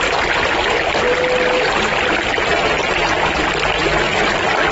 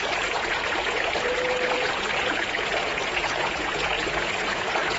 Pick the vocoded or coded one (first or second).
second